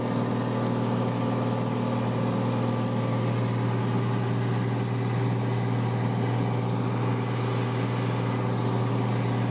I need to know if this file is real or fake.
real